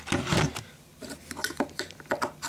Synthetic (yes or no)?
yes